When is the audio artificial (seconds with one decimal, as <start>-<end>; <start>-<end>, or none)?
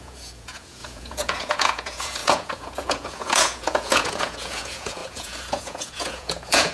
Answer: 0.0-6.7